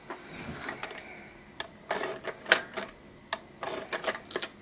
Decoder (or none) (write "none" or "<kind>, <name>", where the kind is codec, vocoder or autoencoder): none